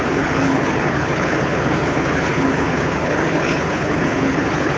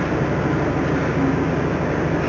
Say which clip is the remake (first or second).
first